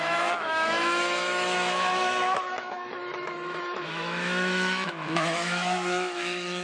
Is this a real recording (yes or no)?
no